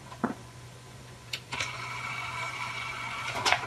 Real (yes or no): no